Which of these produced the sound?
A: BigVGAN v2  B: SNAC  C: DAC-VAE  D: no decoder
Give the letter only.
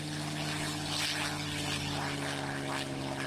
D